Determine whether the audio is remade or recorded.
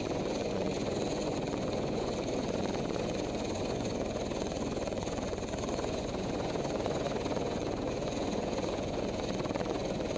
remade